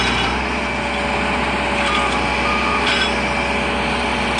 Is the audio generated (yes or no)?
no